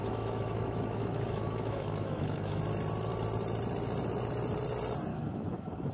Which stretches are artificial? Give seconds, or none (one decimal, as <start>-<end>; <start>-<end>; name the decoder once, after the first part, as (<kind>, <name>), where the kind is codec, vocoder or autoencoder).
0.0-2.6 (autoencoder, DAC-VAE); 5.1-5.9